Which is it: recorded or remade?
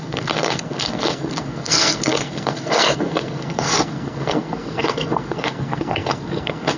remade